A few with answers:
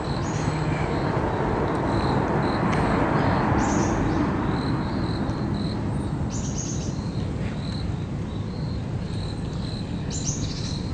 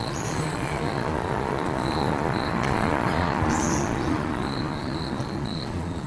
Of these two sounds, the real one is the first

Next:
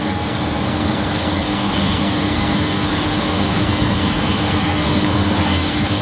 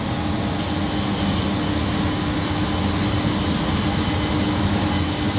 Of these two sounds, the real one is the second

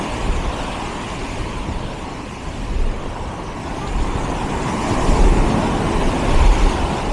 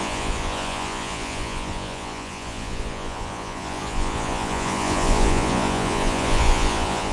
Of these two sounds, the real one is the first